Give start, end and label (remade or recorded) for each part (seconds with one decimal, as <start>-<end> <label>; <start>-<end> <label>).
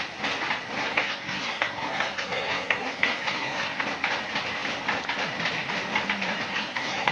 0.0-0.8 recorded; 0.8-3.8 remade; 3.8-6.5 recorded; 6.5-7.1 remade